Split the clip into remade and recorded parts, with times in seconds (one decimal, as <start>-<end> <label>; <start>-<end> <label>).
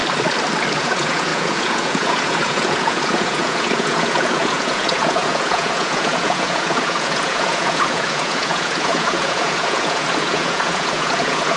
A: 0.0-0.8 recorded; 0.8-11.6 remade